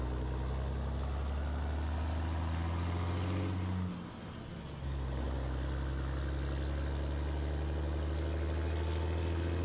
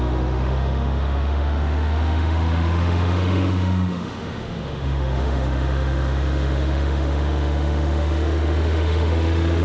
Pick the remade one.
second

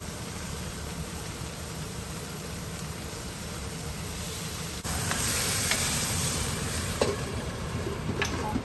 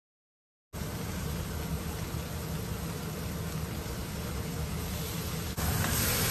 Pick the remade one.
first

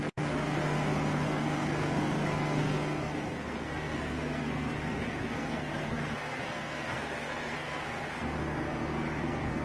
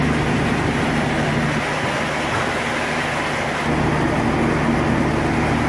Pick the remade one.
first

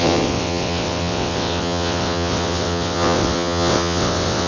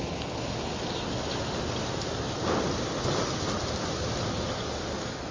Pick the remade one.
first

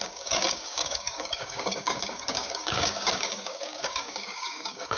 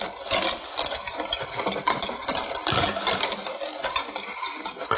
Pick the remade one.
first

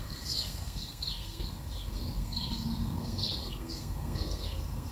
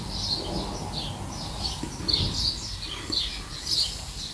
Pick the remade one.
first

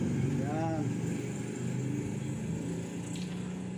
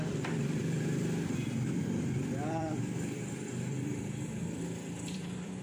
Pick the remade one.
second